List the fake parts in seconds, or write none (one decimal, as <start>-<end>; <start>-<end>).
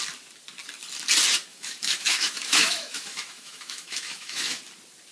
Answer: 1.5-4.6